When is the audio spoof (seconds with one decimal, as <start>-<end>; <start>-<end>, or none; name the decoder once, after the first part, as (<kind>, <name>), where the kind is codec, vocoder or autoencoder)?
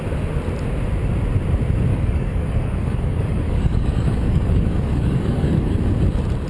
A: 1.9-5.8 (codec, DAC)